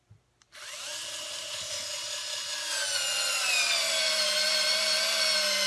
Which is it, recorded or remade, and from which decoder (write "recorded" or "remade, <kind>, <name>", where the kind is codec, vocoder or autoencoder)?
recorded